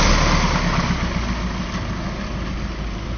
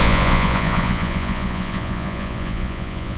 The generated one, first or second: second